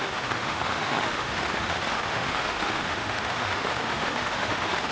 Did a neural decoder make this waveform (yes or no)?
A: yes